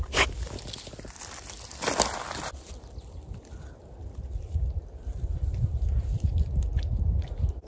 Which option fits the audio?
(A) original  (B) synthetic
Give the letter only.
A